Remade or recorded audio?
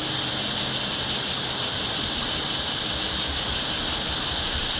recorded